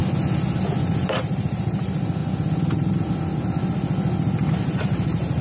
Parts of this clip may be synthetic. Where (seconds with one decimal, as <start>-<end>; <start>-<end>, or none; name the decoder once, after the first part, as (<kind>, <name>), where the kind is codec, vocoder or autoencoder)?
1.0-2.2 (vocoder, BigVGAN v2); 4.5-5.4